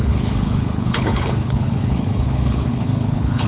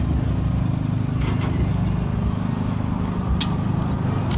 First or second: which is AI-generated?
first